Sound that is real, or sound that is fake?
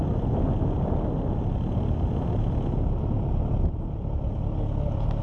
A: real